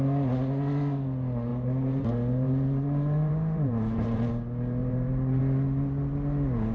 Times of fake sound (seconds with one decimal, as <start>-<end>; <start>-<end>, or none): 1.5-4.3; 4.8-5.4